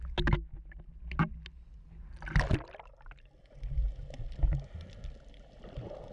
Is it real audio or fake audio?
real